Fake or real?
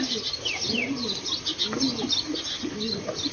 real